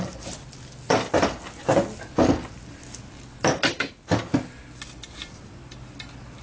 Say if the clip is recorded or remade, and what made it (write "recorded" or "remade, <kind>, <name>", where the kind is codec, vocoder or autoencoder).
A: recorded